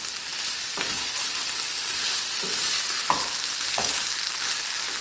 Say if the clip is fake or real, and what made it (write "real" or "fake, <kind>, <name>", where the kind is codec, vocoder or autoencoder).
real